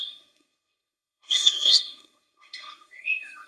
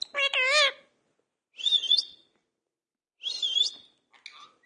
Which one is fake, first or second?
first